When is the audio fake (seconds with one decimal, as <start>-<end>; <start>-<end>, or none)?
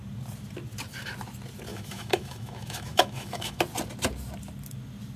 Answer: 1.7-3.6